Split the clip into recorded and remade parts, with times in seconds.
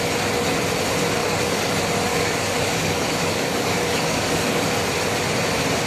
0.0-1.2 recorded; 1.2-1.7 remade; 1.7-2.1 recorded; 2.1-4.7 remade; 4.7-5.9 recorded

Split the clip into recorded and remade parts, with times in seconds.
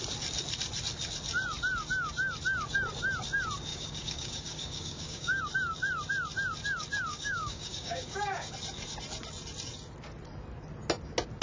0.0-3.7 recorded; 3.7-5.4 remade; 5.4-7.1 recorded; 7.1-8.5 remade; 8.5-11.4 recorded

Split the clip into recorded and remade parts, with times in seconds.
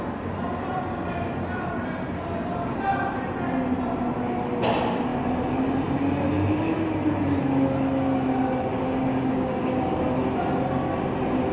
0.0-8.7 recorded; 8.7-10.0 remade; 10.0-11.5 recorded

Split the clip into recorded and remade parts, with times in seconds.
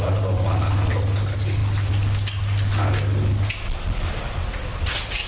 0.0-5.3 recorded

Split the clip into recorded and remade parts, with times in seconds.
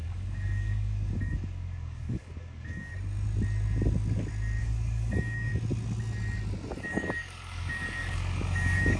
0.0-2.9 remade; 2.9-4.6 recorded; 4.6-5.5 remade; 5.5-6.8 recorded; 6.8-9.0 remade